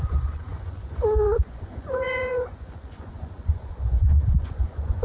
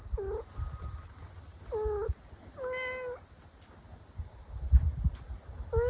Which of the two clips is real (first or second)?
second